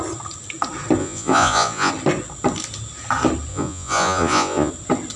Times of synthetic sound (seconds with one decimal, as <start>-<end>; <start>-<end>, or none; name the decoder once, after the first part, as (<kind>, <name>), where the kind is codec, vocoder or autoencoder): 1.0-1.9 (vocoder, Vocos); 3.5-4.7